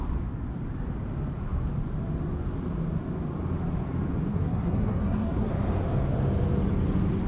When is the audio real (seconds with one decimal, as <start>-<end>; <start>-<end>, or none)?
0.0-4.3; 5.5-7.3